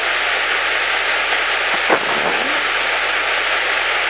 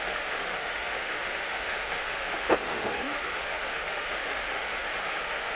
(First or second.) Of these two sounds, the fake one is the second